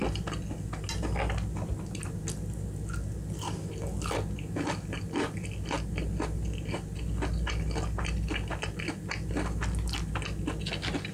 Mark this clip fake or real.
real